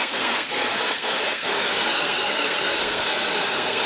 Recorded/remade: remade